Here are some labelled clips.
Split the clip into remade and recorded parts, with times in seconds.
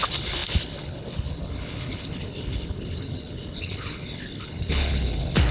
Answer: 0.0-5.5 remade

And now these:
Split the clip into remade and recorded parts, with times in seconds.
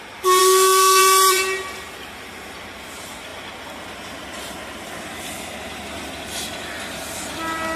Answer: 0.0-0.4 recorded; 0.4-1.0 remade; 1.0-7.8 recorded